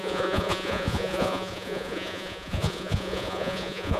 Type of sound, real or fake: fake